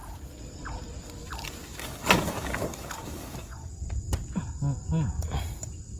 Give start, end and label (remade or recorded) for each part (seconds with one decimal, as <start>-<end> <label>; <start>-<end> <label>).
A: 0.0-1.7 recorded; 1.7-3.7 remade; 3.7-6.0 recorded